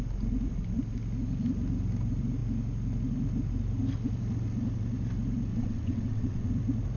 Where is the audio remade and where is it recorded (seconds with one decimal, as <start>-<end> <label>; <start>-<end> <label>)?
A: 0.0-5.5 recorded; 5.5-6.5 remade; 6.5-7.0 recorded